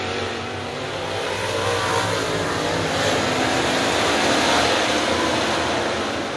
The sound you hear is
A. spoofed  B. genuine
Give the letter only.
B